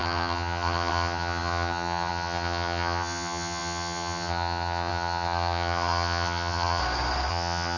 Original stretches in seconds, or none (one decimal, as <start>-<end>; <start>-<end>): 6.8-7.3